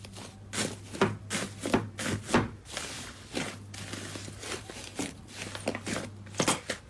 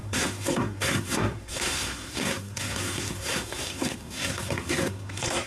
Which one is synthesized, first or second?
second